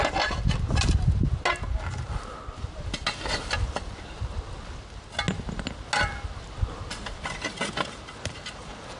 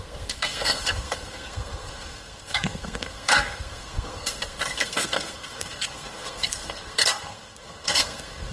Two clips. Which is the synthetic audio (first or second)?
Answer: second